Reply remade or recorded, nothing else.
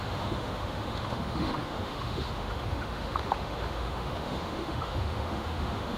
remade